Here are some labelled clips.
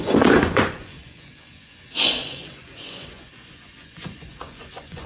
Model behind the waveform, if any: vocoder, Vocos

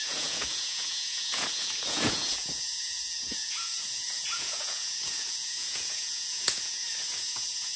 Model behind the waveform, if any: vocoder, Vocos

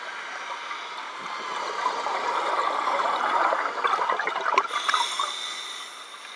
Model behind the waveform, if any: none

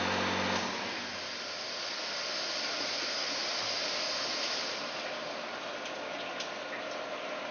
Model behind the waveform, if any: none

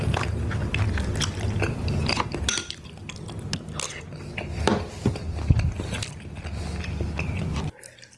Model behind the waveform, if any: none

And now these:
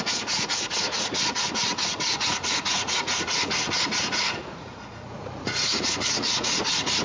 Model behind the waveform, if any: vocoder, Vocos